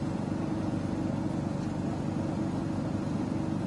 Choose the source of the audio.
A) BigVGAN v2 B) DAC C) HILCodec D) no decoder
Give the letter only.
D